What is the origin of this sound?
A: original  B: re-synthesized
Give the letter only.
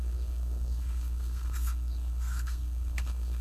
B